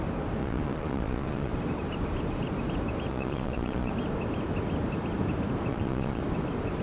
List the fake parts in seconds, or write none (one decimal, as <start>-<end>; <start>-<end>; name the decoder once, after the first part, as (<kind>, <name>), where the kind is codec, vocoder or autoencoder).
0.4-1.5 (vocoder, Vocos); 3.1-3.9; 5.7-6.2